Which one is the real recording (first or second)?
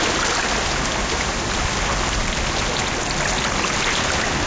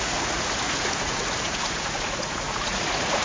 first